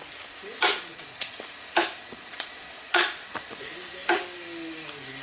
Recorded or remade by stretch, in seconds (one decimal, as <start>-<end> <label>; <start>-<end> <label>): 0.0-0.7 recorded; 0.7-1.4 remade; 1.4-2.0 recorded; 2.0-3.7 remade; 3.7-5.2 recorded